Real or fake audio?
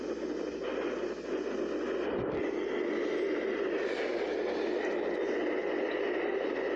real